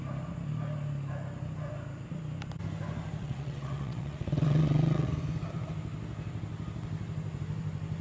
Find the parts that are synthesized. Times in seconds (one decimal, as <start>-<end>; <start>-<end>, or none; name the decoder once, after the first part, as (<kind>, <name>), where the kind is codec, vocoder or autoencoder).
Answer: 3.2-5.1 (vocoder, WaveNeXt)

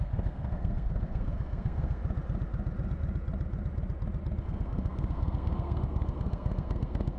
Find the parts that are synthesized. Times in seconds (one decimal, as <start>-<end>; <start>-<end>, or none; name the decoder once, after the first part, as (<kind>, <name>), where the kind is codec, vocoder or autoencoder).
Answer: 0.0-2.0 (codec, SNAC); 4.4-7.2

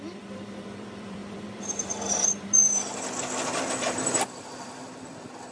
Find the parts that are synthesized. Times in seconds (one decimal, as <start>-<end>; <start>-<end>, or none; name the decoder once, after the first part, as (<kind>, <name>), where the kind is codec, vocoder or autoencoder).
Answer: 0.0-5.5 (vocoder, BigVGAN v2)

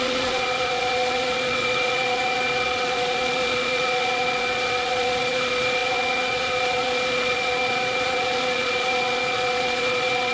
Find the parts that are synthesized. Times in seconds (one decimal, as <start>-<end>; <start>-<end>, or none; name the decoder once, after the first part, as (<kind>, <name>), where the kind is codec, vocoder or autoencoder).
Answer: 0.0-10.3 (vocoder, Vocos)

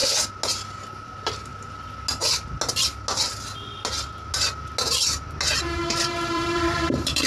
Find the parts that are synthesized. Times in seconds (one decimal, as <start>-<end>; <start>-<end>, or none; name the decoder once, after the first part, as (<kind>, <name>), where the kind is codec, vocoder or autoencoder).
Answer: 5.8-7.3 (vocoder, BigVGAN v2)

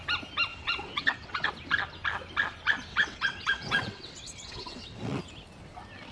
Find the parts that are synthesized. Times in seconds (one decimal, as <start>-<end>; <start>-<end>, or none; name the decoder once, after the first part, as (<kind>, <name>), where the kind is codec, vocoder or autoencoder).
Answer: 0.5-1.5 (vocoder, WaveNeXt); 2.9-5.2

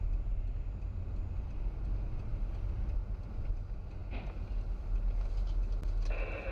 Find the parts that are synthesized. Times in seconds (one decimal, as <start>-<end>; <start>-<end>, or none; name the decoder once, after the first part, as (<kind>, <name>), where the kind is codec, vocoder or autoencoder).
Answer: none

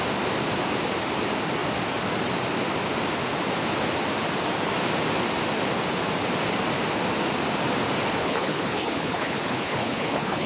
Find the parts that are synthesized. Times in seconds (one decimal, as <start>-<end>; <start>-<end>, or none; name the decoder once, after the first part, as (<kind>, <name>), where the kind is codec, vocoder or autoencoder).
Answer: 8.2-10.5 (codec, HILCodec)